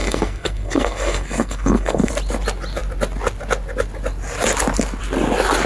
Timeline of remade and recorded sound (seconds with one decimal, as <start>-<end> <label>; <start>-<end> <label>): 0.0-2.1 remade; 2.1-5.7 recorded